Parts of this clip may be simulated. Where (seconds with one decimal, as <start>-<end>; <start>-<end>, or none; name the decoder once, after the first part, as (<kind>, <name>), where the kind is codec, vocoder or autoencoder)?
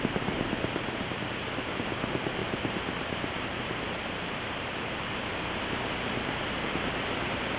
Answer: 2.4-5.9 (vocoder, BigVGAN v2)